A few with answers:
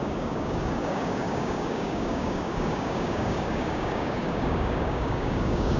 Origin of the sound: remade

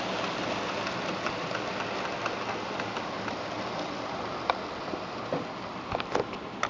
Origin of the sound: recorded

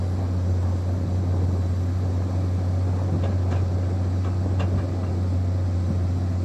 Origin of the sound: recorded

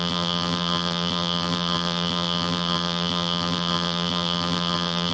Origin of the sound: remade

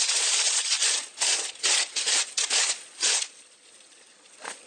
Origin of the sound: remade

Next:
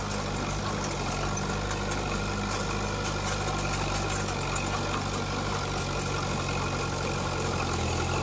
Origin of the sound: recorded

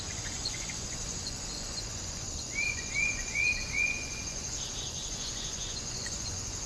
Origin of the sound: remade